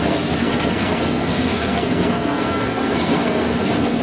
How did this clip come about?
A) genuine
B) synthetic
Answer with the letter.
B